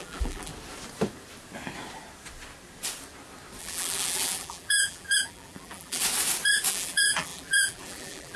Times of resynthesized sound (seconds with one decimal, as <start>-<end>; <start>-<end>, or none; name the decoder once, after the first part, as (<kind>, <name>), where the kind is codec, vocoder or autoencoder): 0.0-0.5 (vocoder, BigVGAN v2); 3.6-6.0; 6.7-8.4